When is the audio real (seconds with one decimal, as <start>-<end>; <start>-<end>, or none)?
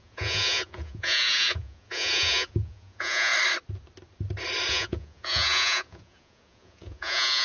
3.3-4.7